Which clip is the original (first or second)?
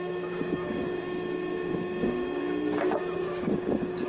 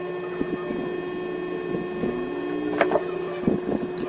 second